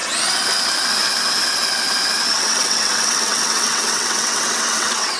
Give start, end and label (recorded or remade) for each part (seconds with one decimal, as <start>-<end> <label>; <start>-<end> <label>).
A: 0.0-2.4 recorded; 2.4-5.2 remade